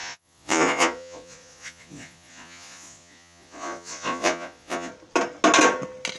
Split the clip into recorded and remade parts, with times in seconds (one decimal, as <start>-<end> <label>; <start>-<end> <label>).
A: 0.0-4.9 remade; 4.9-6.2 recorded

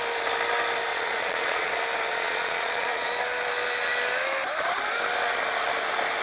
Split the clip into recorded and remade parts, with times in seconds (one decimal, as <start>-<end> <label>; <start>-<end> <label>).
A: 0.0-0.9 recorded; 0.9-1.7 remade; 1.7-2.1 recorded; 2.1-3.1 remade; 3.1-6.2 recorded

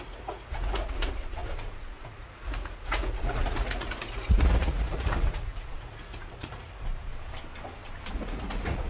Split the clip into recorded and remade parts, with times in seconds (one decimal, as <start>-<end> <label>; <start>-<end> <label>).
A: 0.0-7.1 remade; 7.1-8.1 recorded; 8.1-8.9 remade

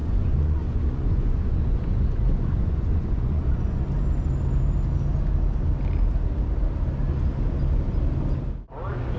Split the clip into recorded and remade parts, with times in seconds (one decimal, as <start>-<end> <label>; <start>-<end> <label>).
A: 0.0-3.8 remade; 3.8-9.2 recorded

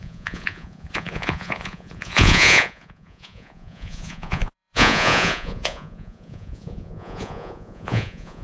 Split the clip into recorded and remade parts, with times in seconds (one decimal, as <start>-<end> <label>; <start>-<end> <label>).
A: 0.0-8.4 remade